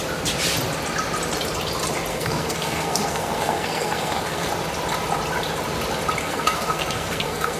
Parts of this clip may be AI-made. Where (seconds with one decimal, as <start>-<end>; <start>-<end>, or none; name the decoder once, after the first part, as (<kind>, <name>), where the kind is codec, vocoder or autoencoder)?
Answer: 2.1-4.5 (codec, SNAC); 6.2-7.6